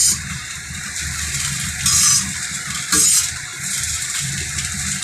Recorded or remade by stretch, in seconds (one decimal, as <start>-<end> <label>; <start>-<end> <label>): 0.0-0.8 remade; 0.8-3.5 recorded; 3.5-4.3 remade; 4.3-5.0 recorded